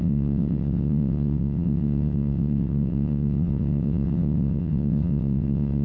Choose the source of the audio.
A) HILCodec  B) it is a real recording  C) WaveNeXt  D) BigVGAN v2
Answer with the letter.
C